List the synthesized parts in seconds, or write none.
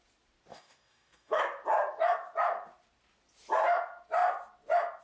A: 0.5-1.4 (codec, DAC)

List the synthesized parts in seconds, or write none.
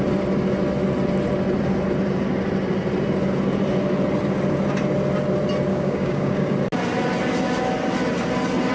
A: 5.7-6.5 (codec, DAC)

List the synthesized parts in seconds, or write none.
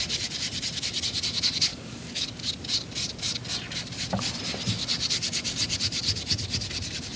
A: 1.7-2.5 (codec, DAC)